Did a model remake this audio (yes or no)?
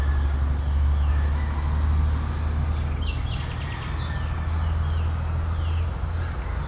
no